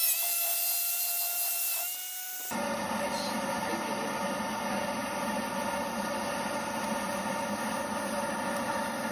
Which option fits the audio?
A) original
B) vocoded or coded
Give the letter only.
A